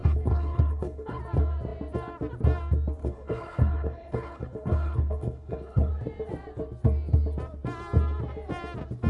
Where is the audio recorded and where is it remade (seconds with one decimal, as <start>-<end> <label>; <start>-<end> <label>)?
0.0-1.2 remade; 1.2-3.0 recorded; 3.0-5.9 remade; 5.9-9.1 recorded